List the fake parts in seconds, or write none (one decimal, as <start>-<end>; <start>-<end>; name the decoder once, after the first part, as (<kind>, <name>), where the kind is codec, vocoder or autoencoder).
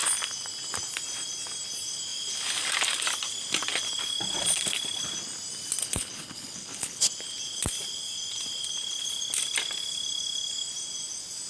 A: 5.8-7.1 (codec, HILCodec)